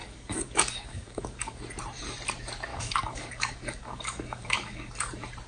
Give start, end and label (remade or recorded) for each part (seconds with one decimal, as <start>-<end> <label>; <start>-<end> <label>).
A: 0.0-1.6 remade; 1.6-2.7 recorded; 2.7-4.9 remade; 4.9-5.5 recorded